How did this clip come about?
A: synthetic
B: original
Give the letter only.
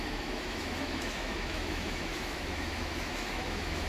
A